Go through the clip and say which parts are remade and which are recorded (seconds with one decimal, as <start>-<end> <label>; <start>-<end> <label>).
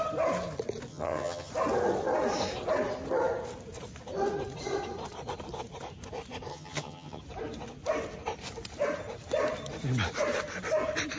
0.0-0.9 recorded; 0.9-1.5 remade; 1.5-6.5 recorded; 6.5-7.2 remade; 7.2-11.2 recorded